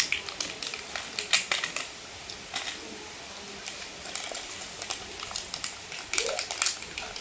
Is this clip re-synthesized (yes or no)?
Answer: no